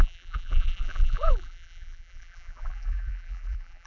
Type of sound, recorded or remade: remade